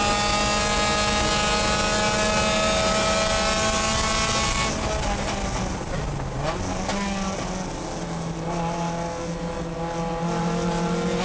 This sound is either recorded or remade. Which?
recorded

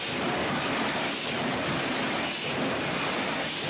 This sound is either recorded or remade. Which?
recorded